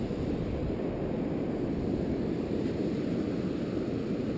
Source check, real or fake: real